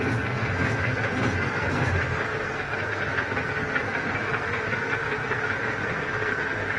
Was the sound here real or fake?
fake